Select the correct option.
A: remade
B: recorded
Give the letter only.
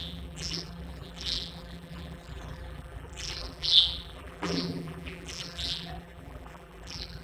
A